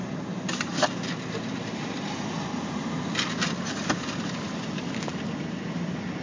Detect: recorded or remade recorded